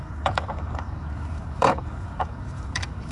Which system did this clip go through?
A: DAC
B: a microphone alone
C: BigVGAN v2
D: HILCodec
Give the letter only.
A